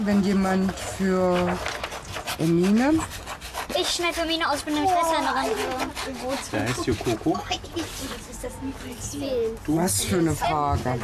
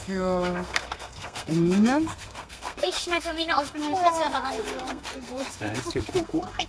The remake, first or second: second